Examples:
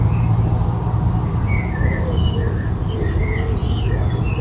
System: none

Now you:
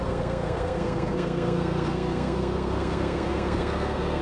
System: codec, SNAC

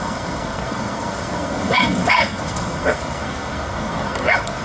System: codec, SNAC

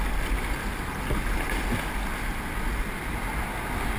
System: none